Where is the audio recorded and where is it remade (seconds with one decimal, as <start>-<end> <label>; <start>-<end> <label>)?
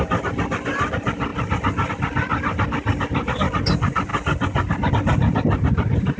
0.0-6.2 recorded